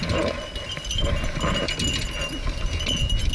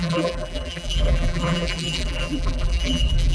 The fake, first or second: second